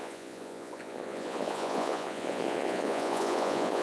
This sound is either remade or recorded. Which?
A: remade